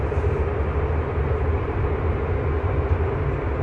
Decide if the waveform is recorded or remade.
recorded